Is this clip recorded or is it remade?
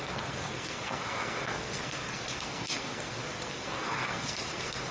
remade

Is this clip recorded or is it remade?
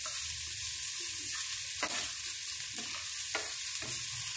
recorded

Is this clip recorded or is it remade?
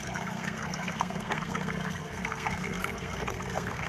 remade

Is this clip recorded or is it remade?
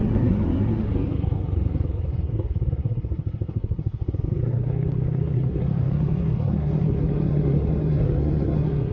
remade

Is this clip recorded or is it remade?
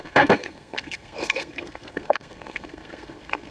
remade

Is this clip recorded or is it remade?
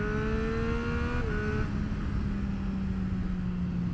recorded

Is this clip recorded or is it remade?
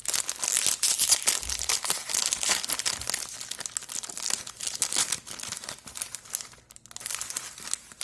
recorded